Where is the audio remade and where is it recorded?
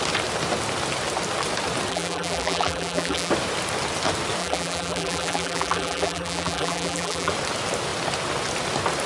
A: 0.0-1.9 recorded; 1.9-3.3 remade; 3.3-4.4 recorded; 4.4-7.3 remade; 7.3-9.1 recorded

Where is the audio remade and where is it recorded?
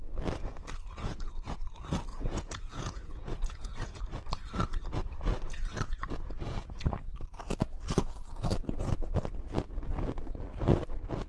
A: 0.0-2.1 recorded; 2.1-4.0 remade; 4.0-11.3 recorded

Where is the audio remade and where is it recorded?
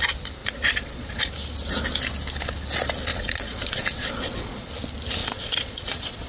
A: 0.0-0.4 recorded; 0.4-1.3 remade; 1.3-3.1 recorded; 3.1-4.7 remade; 4.7-5.2 recorded; 5.2-6.3 remade